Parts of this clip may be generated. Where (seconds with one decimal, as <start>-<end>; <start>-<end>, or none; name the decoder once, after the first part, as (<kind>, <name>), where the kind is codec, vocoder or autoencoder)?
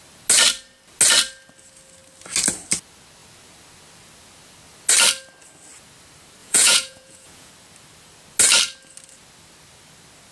6.4-7.5 (vocoder, Vocos)